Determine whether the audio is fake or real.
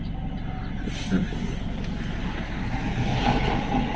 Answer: real